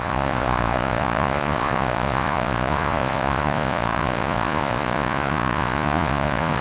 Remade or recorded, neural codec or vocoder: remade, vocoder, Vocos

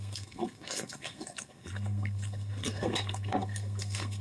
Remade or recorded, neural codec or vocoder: remade, codec, SNAC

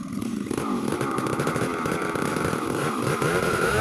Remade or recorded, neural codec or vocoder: recorded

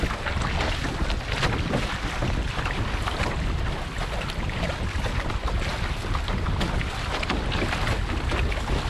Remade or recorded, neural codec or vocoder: recorded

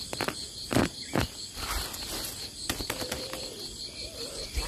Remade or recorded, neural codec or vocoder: recorded